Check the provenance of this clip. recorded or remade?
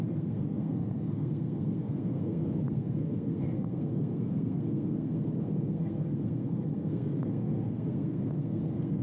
remade